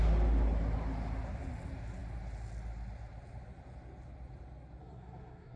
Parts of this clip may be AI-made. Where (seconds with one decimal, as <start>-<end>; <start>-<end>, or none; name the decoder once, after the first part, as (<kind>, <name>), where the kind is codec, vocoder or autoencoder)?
4.8-5.6 (codec, SNAC)